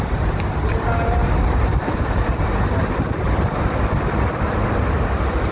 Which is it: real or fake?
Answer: real